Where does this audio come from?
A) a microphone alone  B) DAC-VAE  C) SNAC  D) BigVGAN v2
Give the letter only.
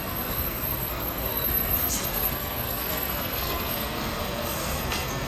C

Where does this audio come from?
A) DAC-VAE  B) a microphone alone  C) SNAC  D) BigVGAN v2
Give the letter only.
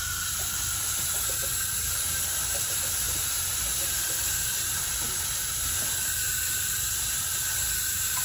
B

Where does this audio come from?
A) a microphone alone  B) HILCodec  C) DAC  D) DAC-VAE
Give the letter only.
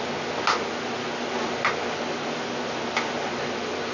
A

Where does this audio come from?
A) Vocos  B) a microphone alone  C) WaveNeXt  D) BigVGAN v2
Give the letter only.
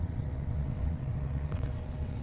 C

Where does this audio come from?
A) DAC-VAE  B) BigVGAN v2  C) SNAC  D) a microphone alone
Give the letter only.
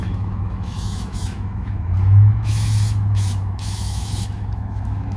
A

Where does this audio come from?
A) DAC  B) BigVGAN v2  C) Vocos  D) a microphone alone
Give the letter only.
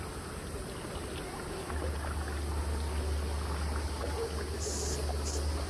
D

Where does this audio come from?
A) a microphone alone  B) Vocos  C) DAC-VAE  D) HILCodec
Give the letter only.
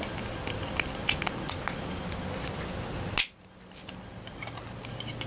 A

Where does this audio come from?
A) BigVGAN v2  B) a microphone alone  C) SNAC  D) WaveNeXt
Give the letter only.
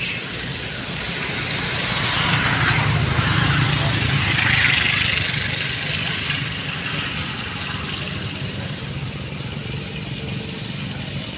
B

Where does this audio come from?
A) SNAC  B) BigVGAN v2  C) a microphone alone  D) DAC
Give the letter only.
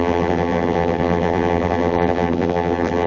B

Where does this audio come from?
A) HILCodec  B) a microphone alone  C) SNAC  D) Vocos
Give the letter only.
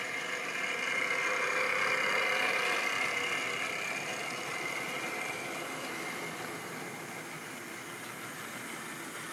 B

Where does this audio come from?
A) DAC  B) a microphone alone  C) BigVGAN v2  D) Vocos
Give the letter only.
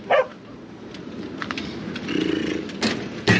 B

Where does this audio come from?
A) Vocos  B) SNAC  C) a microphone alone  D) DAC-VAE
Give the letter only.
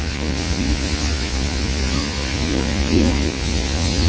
A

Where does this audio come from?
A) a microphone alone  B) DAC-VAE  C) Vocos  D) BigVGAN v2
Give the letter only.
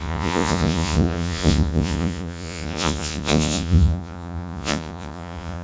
C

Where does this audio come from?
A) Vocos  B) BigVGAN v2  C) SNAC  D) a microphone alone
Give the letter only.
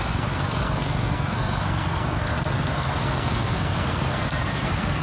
C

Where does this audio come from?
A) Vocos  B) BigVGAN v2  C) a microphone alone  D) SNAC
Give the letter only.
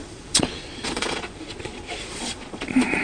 A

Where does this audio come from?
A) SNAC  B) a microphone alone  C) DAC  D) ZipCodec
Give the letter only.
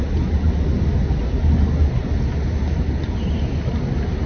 B